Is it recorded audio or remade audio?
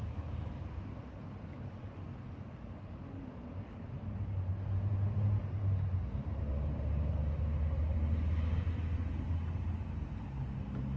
recorded